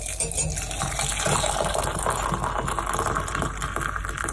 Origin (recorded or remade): recorded